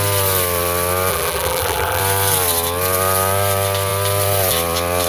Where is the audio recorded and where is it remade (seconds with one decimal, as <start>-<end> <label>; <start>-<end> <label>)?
0.0-1.1 recorded; 1.1-2.0 remade; 2.0-5.1 recorded